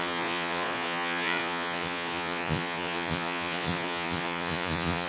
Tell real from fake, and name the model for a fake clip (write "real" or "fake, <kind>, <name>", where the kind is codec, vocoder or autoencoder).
fake, vocoder, Vocos